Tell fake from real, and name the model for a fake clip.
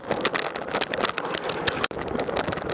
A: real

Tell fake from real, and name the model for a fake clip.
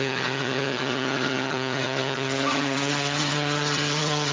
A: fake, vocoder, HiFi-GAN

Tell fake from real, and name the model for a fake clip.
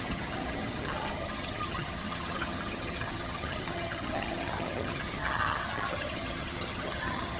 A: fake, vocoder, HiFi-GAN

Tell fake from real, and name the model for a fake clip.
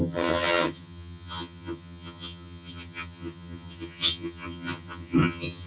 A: fake, vocoder, HiFi-GAN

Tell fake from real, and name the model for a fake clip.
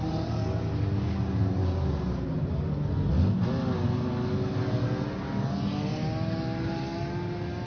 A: real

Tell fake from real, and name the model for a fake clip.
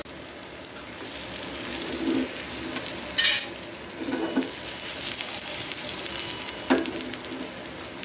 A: real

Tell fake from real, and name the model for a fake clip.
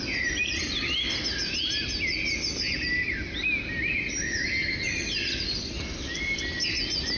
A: real